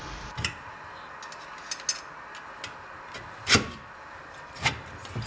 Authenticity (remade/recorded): recorded